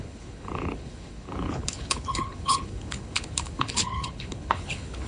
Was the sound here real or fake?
fake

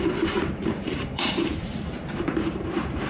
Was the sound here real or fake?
fake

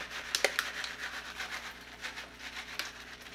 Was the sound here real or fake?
real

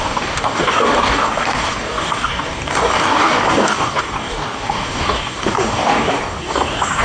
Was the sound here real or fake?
fake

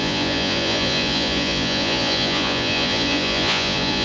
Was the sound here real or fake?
fake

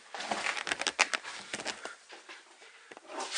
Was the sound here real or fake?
real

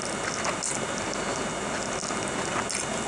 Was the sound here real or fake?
real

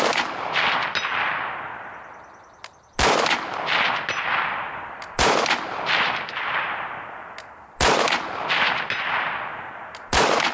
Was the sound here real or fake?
real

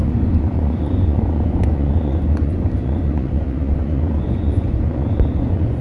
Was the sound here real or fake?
fake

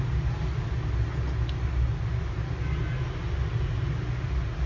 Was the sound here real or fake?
real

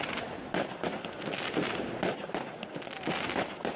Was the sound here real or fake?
fake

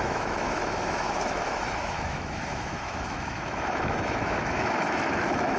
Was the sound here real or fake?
fake